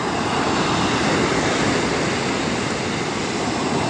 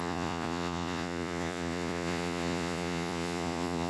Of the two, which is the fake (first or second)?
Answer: second